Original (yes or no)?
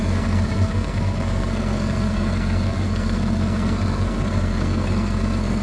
no